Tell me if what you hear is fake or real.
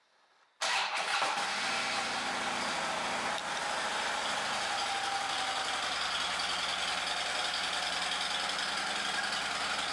real